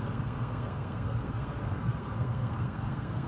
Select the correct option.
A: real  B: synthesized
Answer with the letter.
B